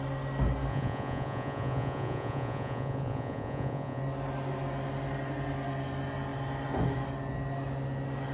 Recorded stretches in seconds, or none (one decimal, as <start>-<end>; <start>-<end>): 0.0-0.7; 4.0-8.3